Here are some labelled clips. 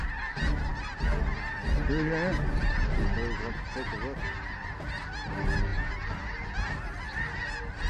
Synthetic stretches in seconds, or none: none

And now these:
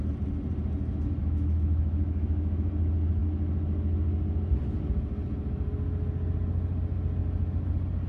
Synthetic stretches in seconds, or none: 1.2-2.7

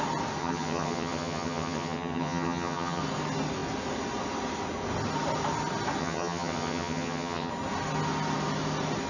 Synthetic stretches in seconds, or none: 0.4-3.0; 6.0-7.5

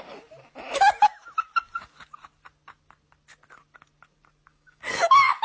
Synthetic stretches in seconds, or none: 4.5-5.4

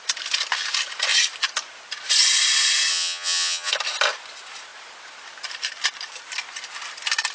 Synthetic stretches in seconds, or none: 2.9-3.7

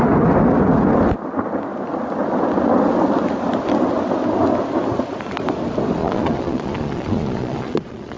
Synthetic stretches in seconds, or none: 6.0-8.2

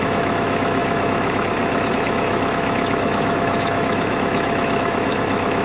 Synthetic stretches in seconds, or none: 0.0-5.6